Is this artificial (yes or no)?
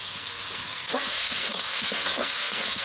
yes